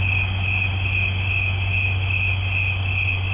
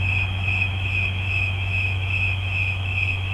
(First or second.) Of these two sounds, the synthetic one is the second